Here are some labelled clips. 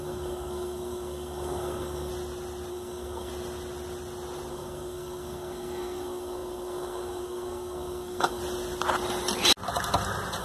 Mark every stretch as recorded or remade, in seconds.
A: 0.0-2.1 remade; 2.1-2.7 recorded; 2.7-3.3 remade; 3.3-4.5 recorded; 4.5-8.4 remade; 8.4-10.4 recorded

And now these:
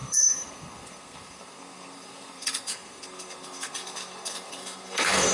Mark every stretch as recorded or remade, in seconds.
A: 0.0-5.3 remade

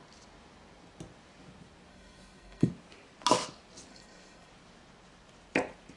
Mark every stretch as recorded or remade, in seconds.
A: 0.0-1.9 recorded; 1.9-2.7 remade; 2.7-3.9 recorded; 3.9-4.5 remade; 4.5-6.0 recorded